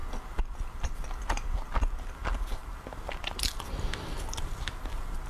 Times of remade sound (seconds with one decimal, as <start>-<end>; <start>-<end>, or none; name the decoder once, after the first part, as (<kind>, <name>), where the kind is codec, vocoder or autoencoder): none